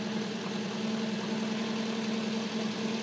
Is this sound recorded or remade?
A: recorded